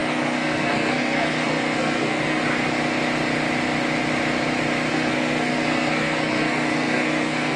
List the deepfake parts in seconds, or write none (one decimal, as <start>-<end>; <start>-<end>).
0.0-2.4; 4.9-7.6